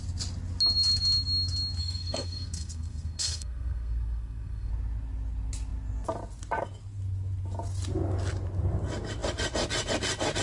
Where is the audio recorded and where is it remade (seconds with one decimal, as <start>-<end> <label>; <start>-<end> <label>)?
0.0-1.8 recorded; 1.8-4.7 remade; 4.7-10.4 recorded